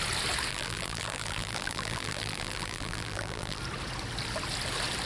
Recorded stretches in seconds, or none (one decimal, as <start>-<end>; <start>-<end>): 0.0-0.5; 3.6-5.1